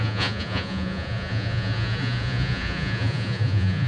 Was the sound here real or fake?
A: fake